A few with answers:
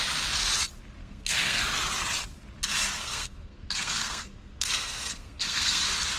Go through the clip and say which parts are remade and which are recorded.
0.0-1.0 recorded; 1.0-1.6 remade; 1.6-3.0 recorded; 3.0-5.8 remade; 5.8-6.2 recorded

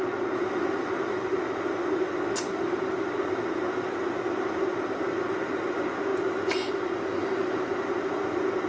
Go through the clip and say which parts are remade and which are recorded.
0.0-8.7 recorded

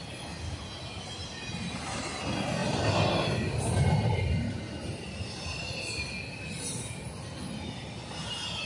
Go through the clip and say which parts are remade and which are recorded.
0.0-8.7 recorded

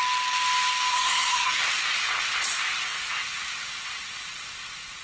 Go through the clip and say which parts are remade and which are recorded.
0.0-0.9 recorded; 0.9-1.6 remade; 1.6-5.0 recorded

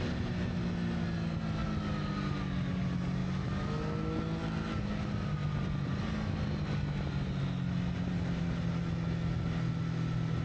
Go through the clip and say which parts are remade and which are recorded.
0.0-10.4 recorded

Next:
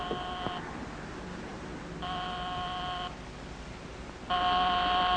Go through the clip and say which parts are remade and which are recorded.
0.0-5.2 recorded